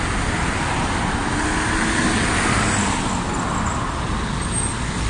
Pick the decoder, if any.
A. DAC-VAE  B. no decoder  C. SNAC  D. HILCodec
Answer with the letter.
B